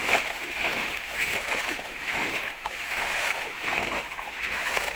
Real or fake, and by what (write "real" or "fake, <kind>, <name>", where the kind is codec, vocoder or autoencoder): fake, autoencoder, DAC-VAE